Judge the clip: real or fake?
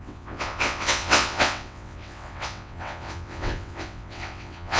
fake